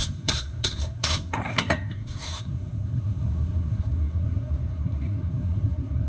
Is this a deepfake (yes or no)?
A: yes